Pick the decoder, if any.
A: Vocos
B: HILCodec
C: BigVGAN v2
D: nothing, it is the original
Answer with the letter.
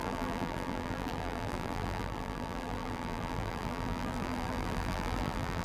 C